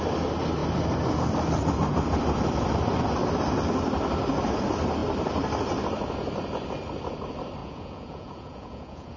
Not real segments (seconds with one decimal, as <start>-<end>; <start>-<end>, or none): 7.6-9.2